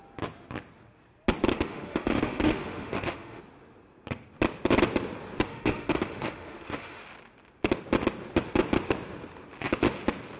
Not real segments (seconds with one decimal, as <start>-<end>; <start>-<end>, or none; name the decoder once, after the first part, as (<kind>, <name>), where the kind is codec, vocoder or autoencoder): 1.5-3.4 (autoencoder, DAC-VAE); 5.5-7.0